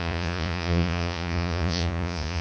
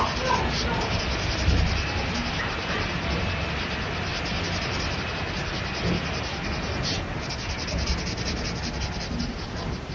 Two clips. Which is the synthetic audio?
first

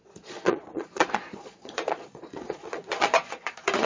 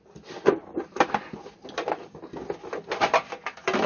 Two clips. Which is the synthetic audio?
first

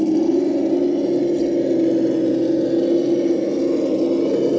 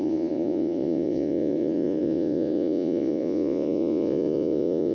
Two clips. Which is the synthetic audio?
second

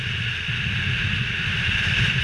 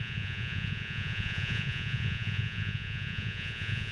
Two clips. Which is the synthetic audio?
second